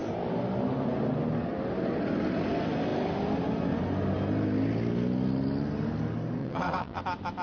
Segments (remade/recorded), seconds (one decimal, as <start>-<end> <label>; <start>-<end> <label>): 0.0-6.4 recorded; 6.4-7.0 remade; 7.0-7.4 recorded